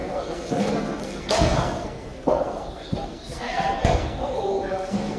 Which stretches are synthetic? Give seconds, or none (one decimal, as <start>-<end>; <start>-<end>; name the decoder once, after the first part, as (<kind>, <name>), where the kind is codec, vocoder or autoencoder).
0.0-5.2 (codec, SNAC)